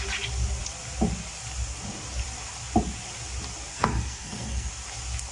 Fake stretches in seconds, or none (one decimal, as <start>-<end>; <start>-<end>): 3.7-4.7